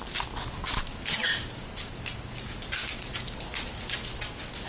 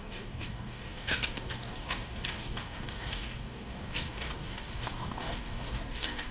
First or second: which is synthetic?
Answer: second